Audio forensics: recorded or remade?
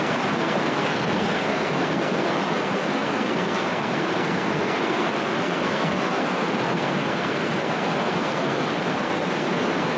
remade